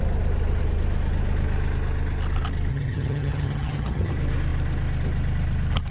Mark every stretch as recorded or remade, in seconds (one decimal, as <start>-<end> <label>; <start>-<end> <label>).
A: 0.0-2.7 recorded; 2.7-4.1 remade; 4.1-5.9 recorded